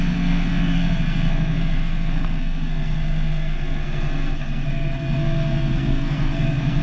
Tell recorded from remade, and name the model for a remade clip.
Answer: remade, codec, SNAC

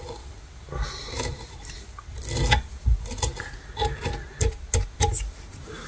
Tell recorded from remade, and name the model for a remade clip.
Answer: recorded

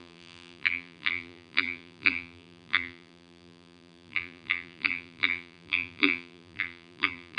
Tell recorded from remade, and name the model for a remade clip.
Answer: remade, vocoder, BigVGAN v2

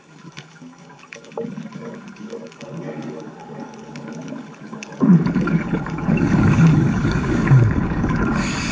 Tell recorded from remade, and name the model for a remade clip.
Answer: remade, codec, DAC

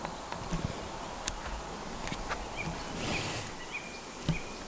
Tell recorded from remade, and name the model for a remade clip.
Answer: recorded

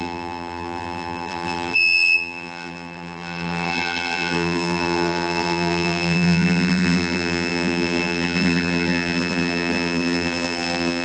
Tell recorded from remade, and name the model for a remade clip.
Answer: remade, vocoder, BigVGAN v2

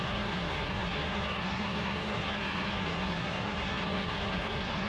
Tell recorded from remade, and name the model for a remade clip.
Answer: remade, codec, SNAC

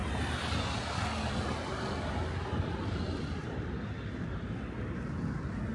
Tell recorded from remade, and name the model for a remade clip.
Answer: recorded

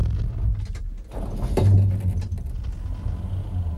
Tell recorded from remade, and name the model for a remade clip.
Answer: recorded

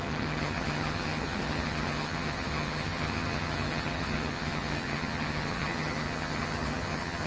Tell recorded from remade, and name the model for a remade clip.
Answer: remade, vocoder, HiFi-GAN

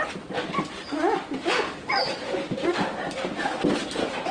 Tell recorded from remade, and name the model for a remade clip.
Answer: recorded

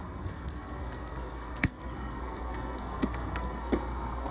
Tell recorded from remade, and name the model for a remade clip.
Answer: remade, codec, SNAC